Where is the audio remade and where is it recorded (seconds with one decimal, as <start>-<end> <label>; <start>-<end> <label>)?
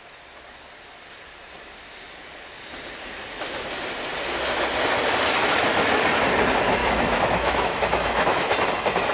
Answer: 0.0-6.8 recorded; 6.8-8.5 remade; 8.5-9.1 recorded